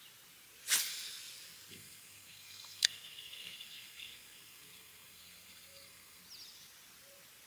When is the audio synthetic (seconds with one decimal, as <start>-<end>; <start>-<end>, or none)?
1.7-6.2